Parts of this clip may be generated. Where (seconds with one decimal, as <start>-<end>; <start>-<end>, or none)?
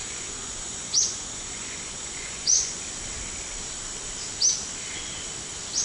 0.0-2.8